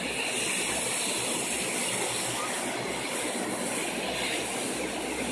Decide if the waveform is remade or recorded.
recorded